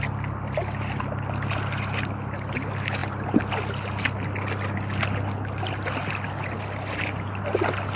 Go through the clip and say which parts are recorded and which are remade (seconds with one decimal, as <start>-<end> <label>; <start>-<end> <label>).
0.0-8.0 recorded